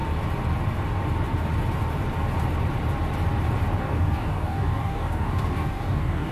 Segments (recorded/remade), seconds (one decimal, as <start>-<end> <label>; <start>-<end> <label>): 0.0-3.8 recorded; 3.8-6.3 remade